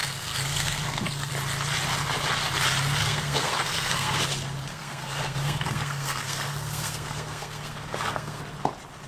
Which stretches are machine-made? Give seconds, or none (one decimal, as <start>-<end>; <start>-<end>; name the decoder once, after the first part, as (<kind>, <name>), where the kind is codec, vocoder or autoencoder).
0.0-1.3 (codec, SNAC); 3.0-4.2; 4.7-8.4